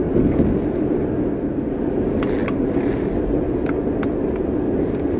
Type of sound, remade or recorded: recorded